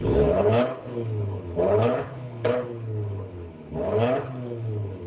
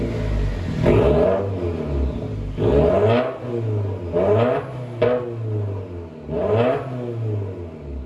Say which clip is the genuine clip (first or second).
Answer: second